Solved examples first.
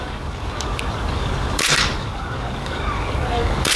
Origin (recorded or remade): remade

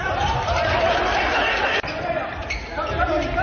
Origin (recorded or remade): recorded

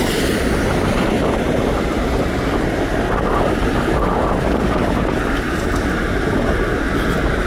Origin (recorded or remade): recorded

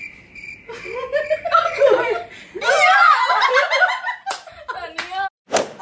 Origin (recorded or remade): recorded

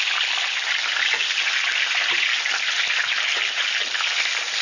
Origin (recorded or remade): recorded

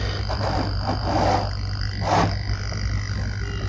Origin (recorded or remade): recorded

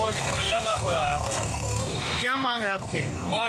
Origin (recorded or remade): remade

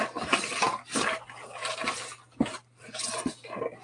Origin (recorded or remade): recorded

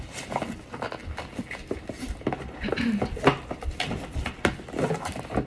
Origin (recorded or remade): recorded